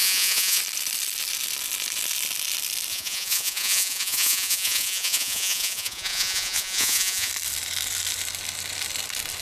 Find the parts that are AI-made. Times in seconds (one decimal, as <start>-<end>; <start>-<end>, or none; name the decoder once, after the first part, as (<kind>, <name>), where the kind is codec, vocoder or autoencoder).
0.0-0.6 (vocoder, Vocos); 2.9-7.3